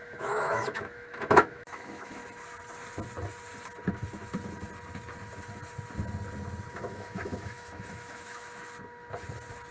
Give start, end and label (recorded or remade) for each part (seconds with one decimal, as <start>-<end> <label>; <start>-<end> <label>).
0.0-2.2 remade; 2.2-6.7 recorded; 6.7-8.6 remade; 8.6-9.7 recorded